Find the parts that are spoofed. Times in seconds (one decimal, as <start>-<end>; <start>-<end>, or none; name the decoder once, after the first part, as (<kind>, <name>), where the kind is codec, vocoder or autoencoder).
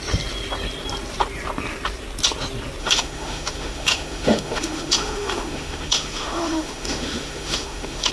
2.8-8.1 (autoencoder, DAC-VAE)